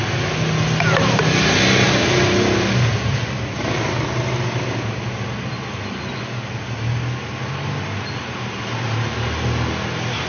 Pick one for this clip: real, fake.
real